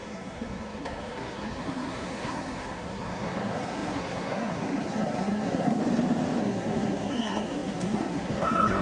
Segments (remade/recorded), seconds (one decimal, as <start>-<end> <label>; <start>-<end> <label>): 0.0-5.8 remade; 5.8-6.4 recorded; 6.4-8.8 remade